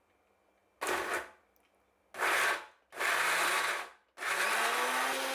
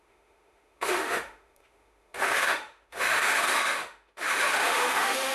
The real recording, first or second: first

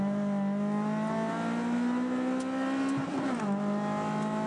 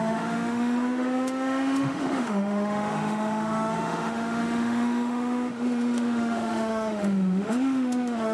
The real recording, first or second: first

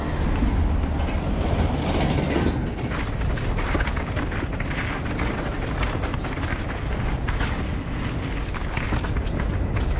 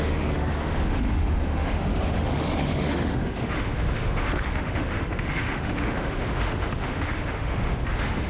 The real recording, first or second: first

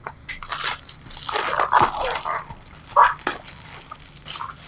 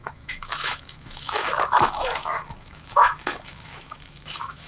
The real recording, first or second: first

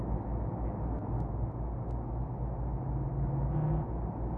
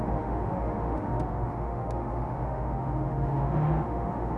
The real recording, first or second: first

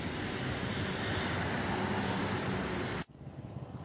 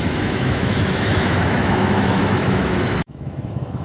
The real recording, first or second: first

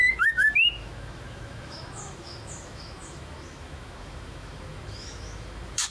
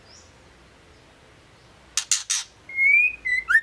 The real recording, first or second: second